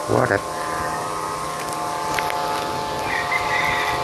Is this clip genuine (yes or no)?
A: yes